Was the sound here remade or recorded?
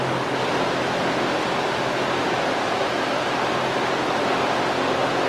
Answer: recorded